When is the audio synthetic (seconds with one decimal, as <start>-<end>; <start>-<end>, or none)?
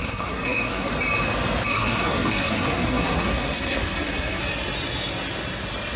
0.0-0.9; 1.7-4.4